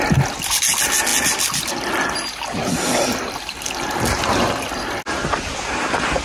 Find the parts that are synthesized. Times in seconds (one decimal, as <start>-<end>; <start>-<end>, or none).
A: none